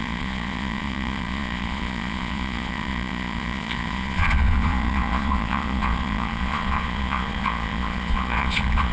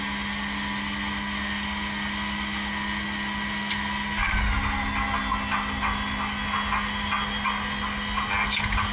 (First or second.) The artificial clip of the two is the first